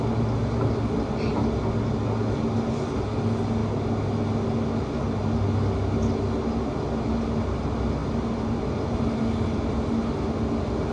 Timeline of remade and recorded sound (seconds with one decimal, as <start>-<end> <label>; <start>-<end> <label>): 0.0-10.9 recorded